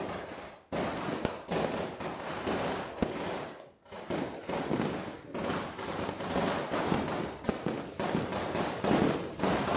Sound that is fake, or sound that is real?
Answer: real